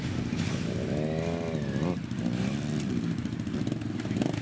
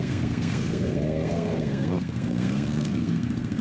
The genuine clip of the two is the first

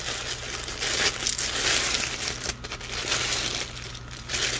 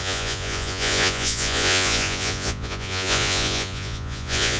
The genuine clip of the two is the first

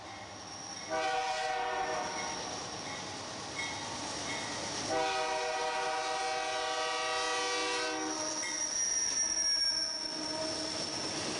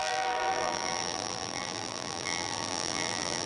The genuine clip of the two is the first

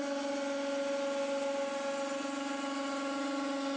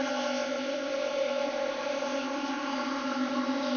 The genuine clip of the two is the first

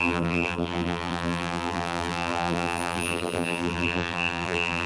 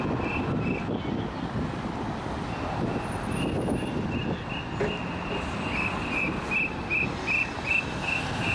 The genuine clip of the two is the second